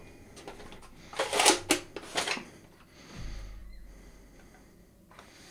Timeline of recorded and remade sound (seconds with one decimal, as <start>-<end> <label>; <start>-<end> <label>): 0.0-5.5 recorded